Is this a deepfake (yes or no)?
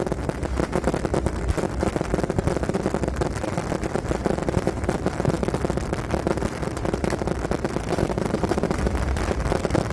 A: no